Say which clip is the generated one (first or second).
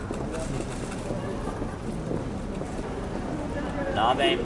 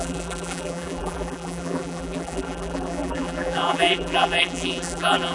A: second